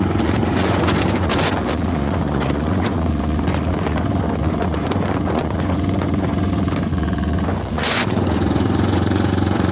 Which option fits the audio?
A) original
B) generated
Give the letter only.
B